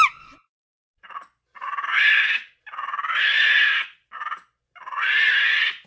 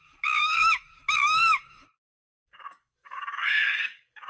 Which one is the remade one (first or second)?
second